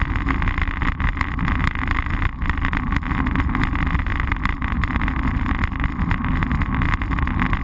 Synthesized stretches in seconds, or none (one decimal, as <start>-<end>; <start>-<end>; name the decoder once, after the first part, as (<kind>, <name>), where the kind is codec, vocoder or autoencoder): none